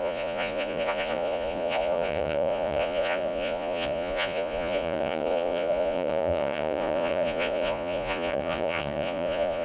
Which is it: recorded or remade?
remade